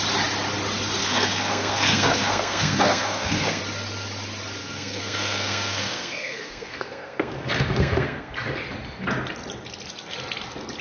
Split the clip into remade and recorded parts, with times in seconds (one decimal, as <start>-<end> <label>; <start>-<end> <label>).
0.0-1.0 recorded; 1.0-3.6 remade; 3.6-4.6 recorded; 4.6-8.3 remade; 8.3-10.8 recorded